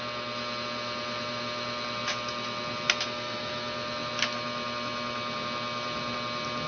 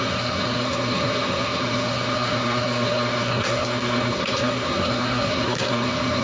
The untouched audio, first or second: first